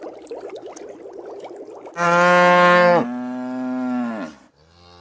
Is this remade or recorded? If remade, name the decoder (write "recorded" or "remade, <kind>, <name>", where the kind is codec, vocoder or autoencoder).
recorded